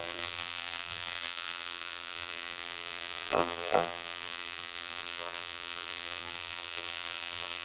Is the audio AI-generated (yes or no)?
yes